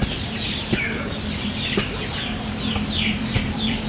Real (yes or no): no